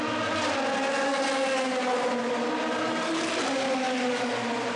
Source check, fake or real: real